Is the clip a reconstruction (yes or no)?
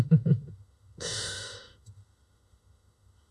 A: yes